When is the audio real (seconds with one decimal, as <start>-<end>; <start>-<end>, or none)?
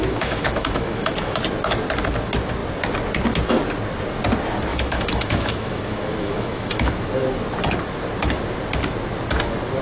1.4-4.7; 6.9-9.8